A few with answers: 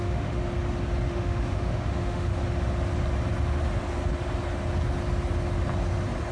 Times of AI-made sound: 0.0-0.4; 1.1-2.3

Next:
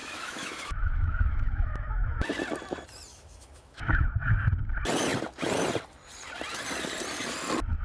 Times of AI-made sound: 0.0-2.2; 3.1-4.3

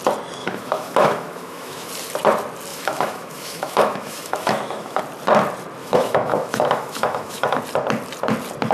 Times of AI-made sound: 0.4-1.9; 2.7-5.0; 5.8-7.6